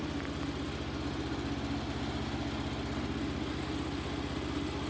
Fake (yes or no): no